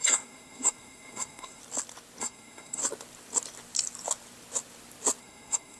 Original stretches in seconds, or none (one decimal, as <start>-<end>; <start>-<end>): 1.6-2.2; 2.8-5.2